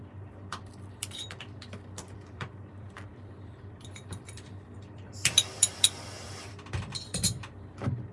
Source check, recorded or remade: remade